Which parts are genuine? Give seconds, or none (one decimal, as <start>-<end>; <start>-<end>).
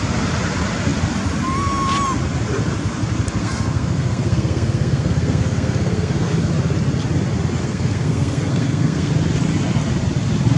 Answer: 0.0-3.4; 6.5-7.6; 9.1-10.6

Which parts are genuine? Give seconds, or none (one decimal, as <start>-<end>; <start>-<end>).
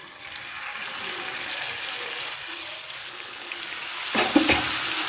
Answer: 0.0-3.0; 3.6-5.1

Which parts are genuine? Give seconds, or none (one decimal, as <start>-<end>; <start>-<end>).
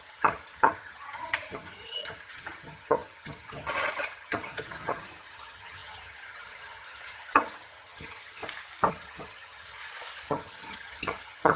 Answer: 8.4-8.9; 9.8-10.3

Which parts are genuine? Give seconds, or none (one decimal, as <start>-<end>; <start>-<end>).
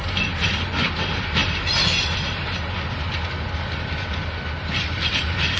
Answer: 0.0-5.6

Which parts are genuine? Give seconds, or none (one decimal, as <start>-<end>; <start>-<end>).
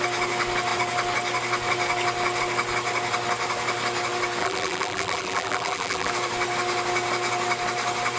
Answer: 0.0-4.4; 6.1-8.2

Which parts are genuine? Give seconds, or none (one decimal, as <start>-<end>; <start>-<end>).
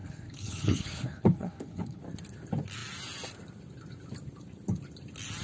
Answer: 2.0-5.4